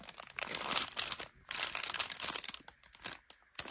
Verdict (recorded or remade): recorded